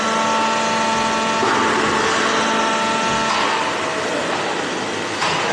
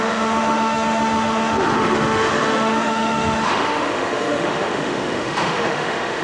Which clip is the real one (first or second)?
first